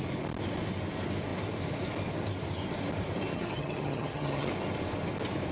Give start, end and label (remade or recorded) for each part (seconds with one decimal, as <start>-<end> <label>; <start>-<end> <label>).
0.0-3.3 recorded; 3.3-4.5 remade; 4.5-5.5 recorded